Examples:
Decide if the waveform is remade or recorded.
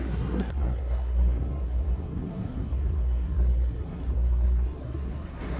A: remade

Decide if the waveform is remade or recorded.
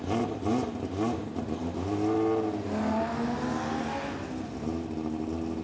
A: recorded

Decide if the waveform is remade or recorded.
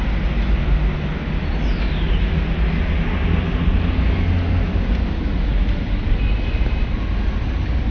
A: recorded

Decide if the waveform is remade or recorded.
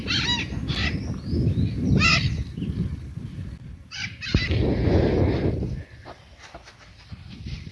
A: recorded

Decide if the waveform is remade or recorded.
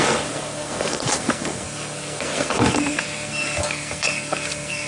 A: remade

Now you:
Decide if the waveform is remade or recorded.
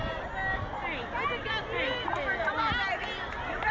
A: recorded